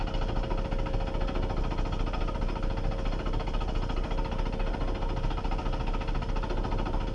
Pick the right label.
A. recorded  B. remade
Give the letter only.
A